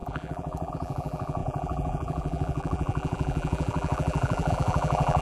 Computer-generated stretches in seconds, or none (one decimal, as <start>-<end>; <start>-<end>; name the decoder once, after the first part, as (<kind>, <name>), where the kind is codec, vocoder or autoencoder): 0.0-5.2 (vocoder, BigVGAN v2)